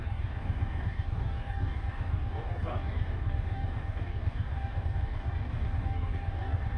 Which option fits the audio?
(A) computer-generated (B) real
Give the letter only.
A